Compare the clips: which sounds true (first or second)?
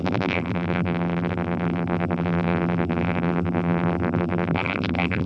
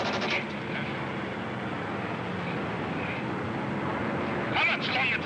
second